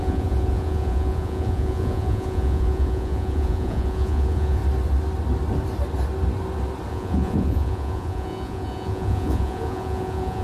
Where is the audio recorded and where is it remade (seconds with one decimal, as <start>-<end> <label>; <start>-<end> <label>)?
0.0-4.6 remade; 4.6-6.9 recorded; 6.9-10.4 remade